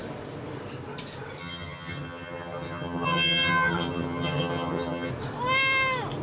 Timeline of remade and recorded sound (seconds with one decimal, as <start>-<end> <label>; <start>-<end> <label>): 0.0-1.4 recorded; 1.4-5.1 remade; 5.1-6.2 recorded